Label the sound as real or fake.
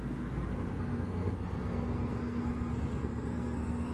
fake